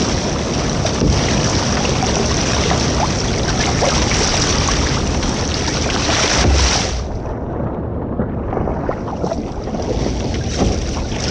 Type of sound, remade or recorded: recorded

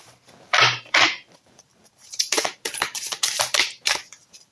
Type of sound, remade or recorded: remade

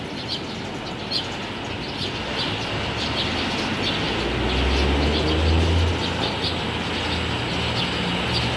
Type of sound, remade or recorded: recorded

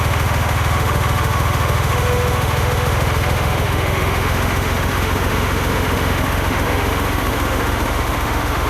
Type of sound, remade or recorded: remade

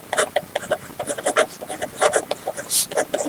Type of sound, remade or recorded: remade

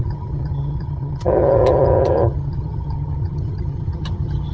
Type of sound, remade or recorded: remade